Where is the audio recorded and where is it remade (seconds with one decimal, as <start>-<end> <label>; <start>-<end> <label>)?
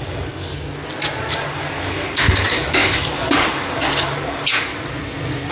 0.0-0.5 remade; 0.5-1.3 recorded; 1.3-4.7 remade; 4.7-5.5 recorded